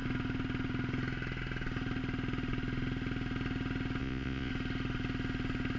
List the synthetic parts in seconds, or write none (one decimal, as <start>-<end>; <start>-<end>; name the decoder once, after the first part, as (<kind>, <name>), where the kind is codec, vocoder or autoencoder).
4.0-4.5 (vocoder, Vocos)